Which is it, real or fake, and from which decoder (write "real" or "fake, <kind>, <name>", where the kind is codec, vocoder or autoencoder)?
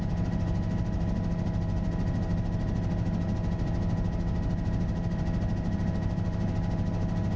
real